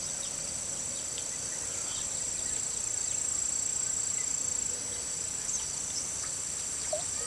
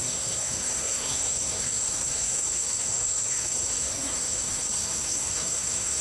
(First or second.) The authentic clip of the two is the first